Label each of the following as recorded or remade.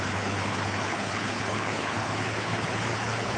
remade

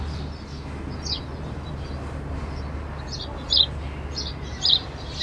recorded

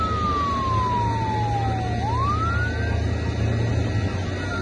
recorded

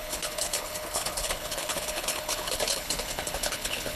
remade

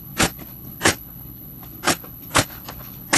remade